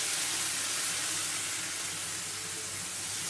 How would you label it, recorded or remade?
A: recorded